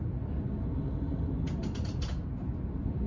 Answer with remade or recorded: recorded